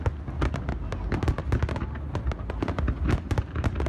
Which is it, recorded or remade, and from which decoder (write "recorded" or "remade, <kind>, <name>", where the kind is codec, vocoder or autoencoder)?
recorded